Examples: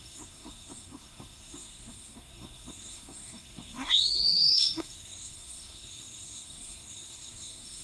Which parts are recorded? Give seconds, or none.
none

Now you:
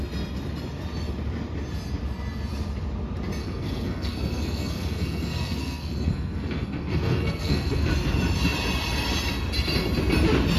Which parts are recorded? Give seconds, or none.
0.0-3.4; 7.9-10.6

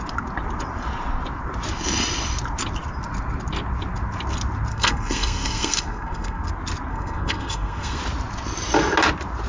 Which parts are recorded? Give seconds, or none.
0.0-4.7; 6.5-6.9; 8.0-9.5

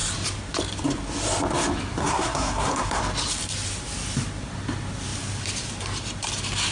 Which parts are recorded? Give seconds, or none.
0.0-2.0; 3.0-6.7

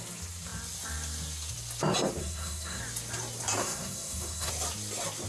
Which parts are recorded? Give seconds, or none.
0.0-2.2; 2.8-3.6; 4.5-5.3

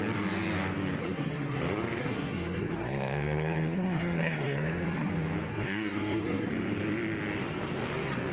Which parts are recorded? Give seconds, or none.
0.0-1.0; 1.6-2.0; 5.1-5.5; 6.5-8.3